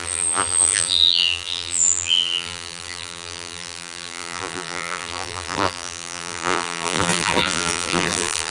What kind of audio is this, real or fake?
fake